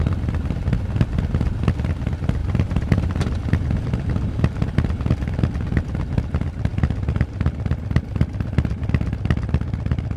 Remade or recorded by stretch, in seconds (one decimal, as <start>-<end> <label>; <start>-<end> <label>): 0.0-2.4 recorded; 2.4-3.1 remade; 3.1-10.2 recorded